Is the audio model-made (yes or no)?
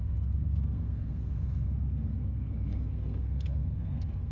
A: yes